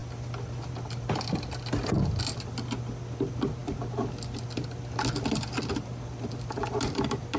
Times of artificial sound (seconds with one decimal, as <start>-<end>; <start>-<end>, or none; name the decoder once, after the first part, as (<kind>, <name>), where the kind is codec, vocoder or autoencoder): none